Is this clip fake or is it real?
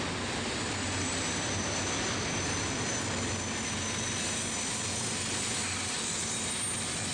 real